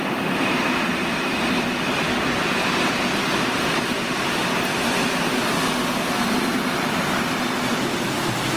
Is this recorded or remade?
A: remade